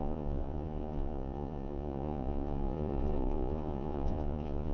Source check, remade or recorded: remade